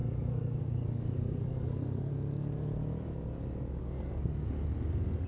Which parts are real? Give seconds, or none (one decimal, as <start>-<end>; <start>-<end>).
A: 2.1-3.8; 4.5-5.3